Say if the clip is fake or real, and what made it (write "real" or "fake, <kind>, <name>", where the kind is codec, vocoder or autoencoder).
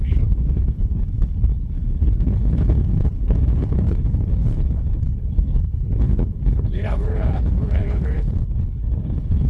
fake, codec, HILCodec